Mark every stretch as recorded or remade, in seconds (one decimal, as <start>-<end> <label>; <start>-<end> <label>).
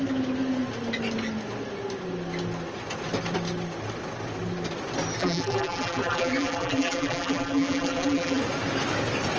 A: 0.0-5.2 recorded; 5.2-8.4 remade; 8.4-9.4 recorded